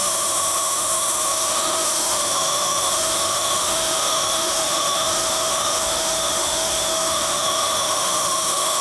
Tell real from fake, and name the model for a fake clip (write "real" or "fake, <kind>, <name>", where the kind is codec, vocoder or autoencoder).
fake, autoencoder, DAC-VAE